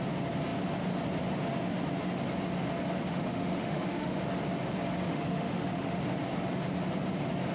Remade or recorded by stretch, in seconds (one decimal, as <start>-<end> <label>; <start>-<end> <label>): 0.0-3.1 recorded; 3.1-4.2 remade; 4.2-5.1 recorded; 5.1-6.0 remade; 6.0-7.5 recorded